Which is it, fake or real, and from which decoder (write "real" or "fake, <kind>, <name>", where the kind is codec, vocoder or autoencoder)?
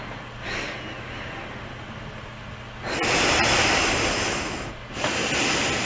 real